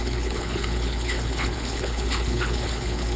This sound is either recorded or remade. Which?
remade